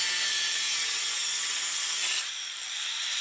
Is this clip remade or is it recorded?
recorded